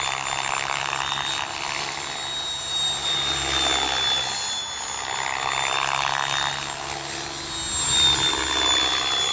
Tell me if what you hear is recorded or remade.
recorded